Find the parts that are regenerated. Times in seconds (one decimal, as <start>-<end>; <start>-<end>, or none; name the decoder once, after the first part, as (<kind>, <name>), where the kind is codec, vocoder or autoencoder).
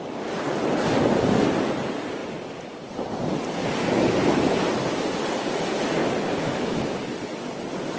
6.0-6.9 (autoencoder, DAC-VAE)